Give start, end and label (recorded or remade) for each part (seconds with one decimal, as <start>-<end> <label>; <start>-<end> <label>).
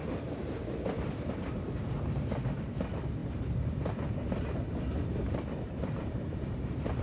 0.0-1.3 recorded; 1.3-7.0 remade